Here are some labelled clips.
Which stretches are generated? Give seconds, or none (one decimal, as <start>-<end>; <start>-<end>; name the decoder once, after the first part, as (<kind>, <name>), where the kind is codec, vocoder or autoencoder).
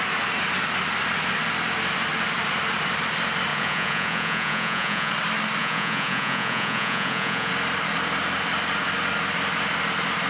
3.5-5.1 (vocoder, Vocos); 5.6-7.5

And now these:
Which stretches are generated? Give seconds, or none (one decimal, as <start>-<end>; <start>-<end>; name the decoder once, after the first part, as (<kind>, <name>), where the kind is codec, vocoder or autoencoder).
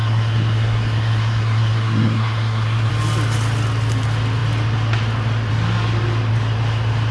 0.0-2.9 (codec, SNAC)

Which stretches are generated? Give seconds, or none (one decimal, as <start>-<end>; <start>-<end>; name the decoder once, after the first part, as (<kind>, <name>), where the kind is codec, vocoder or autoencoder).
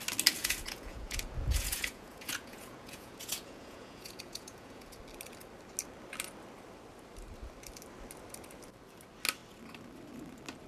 0.4-5.0 (vocoder, Vocos)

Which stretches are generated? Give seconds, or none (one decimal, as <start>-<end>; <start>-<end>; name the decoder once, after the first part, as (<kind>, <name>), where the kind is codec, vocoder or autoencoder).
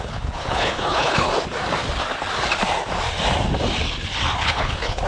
0.0-1.3 (codec, HILCodec); 4.4-5.1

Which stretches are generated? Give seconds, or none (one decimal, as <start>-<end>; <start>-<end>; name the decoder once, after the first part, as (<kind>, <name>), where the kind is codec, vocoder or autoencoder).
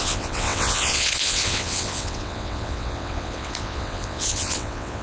0.0-5.0 (vocoder, WaveNeXt)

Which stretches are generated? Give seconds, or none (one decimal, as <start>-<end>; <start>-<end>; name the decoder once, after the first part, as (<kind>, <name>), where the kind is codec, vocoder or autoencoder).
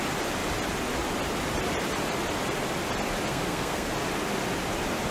3.3-3.9 (codec, SNAC)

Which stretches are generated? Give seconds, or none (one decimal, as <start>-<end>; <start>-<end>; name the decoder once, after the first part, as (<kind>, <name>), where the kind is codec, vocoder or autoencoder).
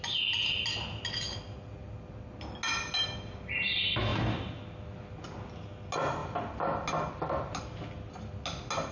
none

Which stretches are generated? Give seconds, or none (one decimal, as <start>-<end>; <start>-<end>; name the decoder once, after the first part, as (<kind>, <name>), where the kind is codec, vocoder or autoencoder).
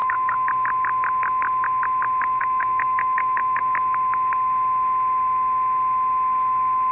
0.0-0.5 (autoencoder, DAC-VAE); 2.4-3.6